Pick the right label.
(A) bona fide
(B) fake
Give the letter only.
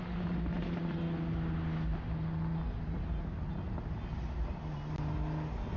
A